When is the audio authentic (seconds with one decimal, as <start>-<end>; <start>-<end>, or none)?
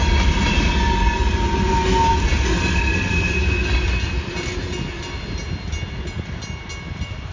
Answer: 0.0-7.3